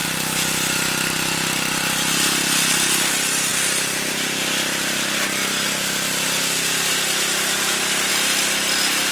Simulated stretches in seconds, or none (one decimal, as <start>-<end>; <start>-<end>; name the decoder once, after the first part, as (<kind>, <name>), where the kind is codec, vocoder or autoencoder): 0.0-1.8 (vocoder, BigVGAN v2); 3.5-8.1